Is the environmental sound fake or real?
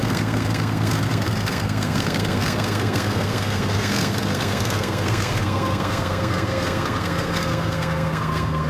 fake